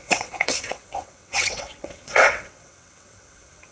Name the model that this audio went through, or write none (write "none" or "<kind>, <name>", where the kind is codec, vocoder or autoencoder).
vocoder, WaveNeXt